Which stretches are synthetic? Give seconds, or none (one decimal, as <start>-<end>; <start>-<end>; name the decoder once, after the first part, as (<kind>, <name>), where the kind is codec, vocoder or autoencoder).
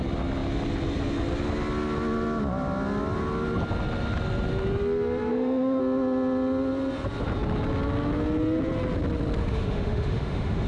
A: 5.3-5.8 (autoencoder, DAC-VAE); 9.4-10.7